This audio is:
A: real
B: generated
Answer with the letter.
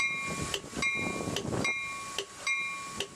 A